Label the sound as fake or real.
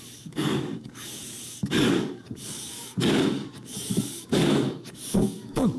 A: fake